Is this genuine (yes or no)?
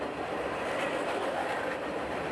yes